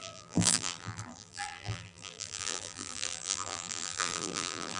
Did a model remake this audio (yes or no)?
yes